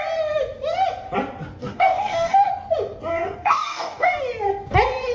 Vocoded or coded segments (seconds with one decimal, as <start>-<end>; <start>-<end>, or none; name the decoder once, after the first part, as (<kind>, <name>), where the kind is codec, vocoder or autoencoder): 1.6-2.5 (codec, DAC); 3.1-4.2